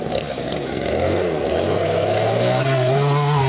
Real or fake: fake